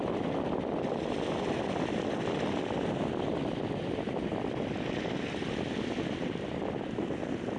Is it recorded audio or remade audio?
recorded